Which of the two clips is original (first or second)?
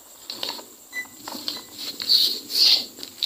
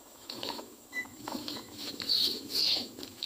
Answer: first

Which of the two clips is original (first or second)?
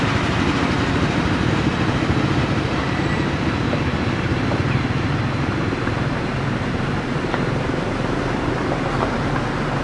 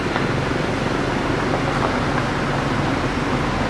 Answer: second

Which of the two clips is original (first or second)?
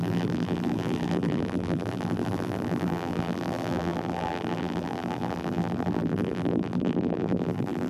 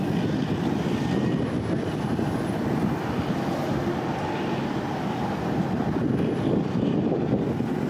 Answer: second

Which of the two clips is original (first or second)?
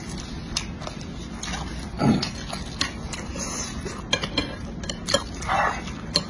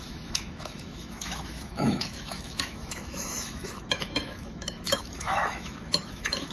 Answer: first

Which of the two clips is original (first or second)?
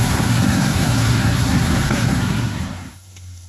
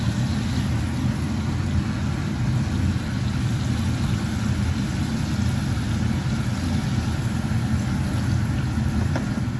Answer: second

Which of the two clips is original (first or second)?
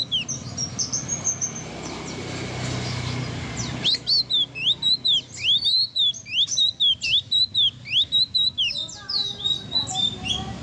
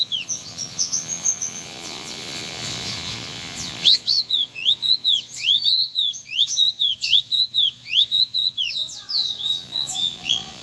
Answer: first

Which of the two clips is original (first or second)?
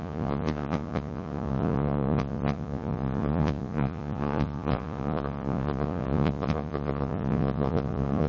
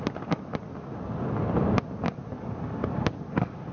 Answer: second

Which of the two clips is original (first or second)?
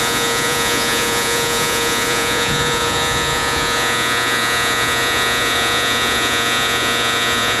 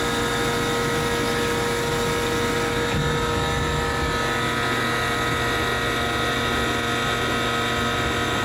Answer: second